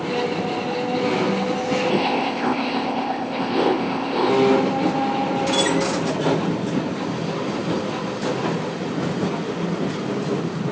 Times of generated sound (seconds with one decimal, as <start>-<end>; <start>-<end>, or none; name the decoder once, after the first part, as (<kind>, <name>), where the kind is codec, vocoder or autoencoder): 1.9-4.3 (codec, ZipCodec)